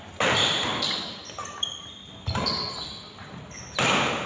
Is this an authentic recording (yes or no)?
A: yes